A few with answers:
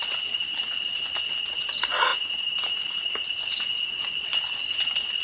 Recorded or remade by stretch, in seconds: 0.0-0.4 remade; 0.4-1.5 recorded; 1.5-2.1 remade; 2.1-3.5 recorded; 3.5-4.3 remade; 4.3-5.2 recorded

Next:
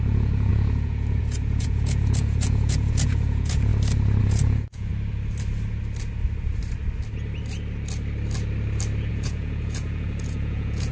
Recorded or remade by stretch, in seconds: 0.0-3.7 remade; 3.7-4.2 recorded; 4.2-4.9 remade; 4.9-9.1 recorded; 9.1-10.9 remade

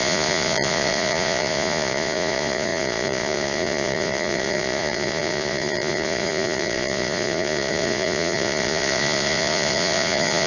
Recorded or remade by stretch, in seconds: 0.0-10.5 remade

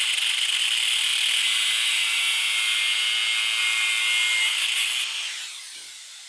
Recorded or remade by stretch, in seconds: 0.0-6.3 recorded

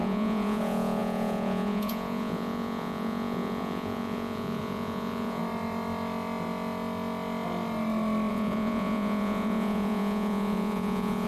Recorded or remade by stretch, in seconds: 0.0-5.4 remade; 5.4-8.3 recorded; 8.3-11.3 remade

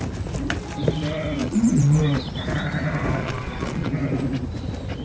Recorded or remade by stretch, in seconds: 0.0-1.4 recorded; 1.4-2.0 remade; 2.0-3.2 recorded; 3.2-3.9 remade; 3.9-5.0 recorded

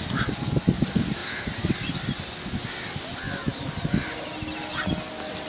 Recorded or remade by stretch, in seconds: 0.0-5.5 recorded

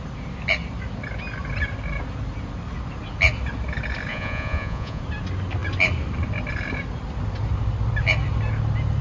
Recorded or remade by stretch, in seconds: 0.0-4.1 recorded; 4.1-5.0 remade; 5.0-9.0 recorded